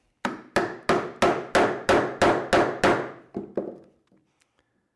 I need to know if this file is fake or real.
real